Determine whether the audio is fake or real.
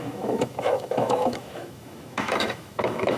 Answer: fake